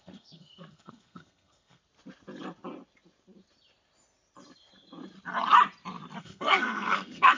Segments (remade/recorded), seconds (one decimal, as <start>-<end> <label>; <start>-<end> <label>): 0.0-1.8 remade; 1.8-6.2 recorded; 6.2-7.4 remade